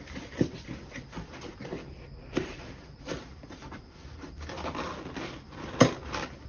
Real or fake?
real